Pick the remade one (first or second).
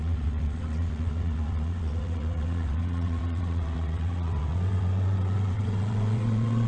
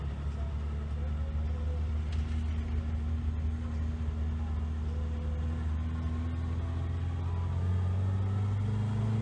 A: first